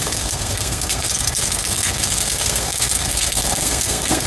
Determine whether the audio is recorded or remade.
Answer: remade